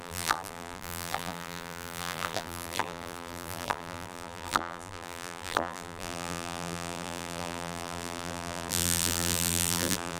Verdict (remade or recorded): remade